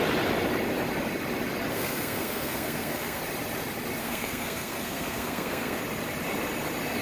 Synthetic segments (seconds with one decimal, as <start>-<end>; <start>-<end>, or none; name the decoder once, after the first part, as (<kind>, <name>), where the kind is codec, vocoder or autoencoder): 1.7-3.2 (codec, SNAC); 4.0-5.8